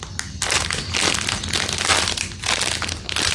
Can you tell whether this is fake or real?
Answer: real